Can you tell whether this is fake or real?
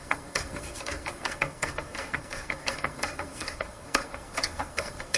fake